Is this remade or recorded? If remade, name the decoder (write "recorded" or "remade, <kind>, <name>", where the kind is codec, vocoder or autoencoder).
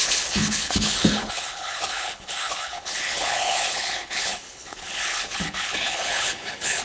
remade, codec, HILCodec